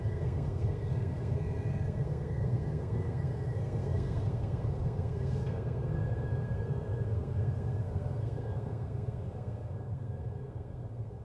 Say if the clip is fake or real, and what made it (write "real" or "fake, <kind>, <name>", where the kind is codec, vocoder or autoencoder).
fake, codec, SNAC